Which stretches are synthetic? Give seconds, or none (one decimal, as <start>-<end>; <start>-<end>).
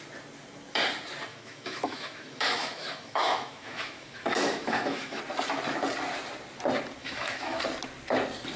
1.3-5.2; 7.0-7.6